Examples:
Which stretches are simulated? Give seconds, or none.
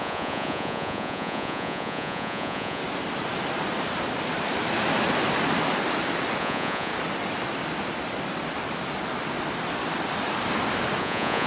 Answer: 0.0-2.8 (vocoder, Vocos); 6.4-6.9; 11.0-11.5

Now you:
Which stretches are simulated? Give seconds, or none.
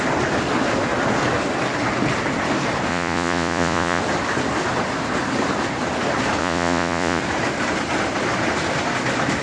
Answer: 2.9-4.0 (vocoder, Vocos); 6.4-7.2